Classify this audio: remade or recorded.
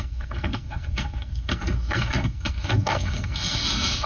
remade